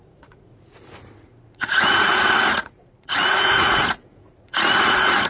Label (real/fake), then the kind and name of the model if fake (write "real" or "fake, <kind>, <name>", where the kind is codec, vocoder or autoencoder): fake, vocoder, Vocos